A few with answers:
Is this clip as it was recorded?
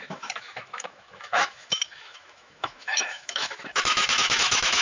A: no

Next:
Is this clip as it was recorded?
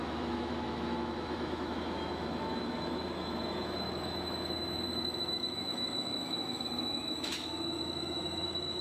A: no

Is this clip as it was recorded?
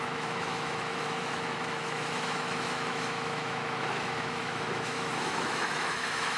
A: no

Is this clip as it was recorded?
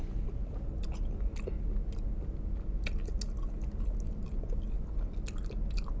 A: yes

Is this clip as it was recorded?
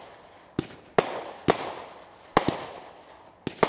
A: yes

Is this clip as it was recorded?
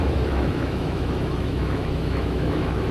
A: no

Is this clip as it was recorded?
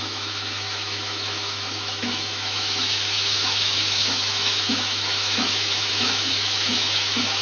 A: no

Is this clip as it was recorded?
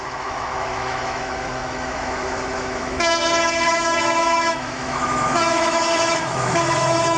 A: no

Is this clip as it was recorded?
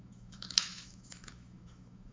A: no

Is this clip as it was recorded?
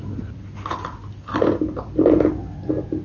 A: yes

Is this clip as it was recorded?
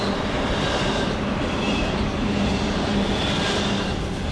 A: yes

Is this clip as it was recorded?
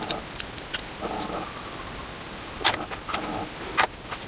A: yes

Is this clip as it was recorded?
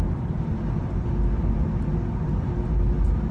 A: yes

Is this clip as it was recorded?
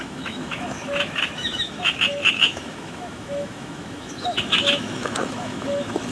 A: no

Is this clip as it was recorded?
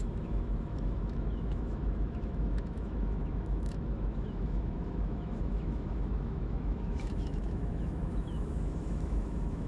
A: no